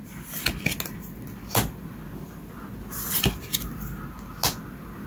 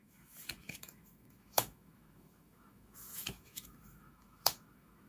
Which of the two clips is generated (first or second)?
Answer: second